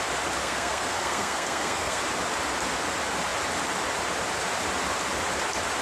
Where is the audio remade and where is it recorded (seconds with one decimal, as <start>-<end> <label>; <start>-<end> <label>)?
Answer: 0.0-0.4 recorded; 0.4-2.0 remade; 2.0-5.8 recorded